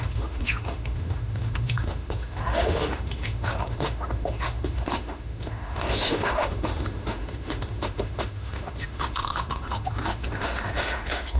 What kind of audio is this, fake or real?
fake